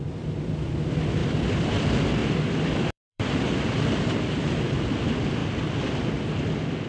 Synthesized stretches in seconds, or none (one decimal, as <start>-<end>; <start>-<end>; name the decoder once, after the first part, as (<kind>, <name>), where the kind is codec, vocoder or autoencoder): 1.2-1.8 (vocoder, BigVGAN v2); 2.2-3.6; 5.4-6.0

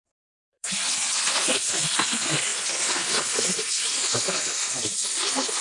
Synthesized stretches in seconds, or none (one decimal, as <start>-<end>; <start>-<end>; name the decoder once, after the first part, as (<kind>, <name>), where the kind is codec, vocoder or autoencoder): 0.0-0.7 (codec, SNAC)